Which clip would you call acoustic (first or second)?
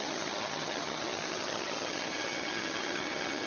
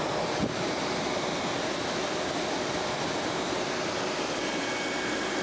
second